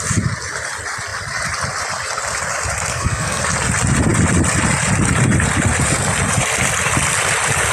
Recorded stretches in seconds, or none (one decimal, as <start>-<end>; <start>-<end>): 0.0-2.9; 3.4-7.7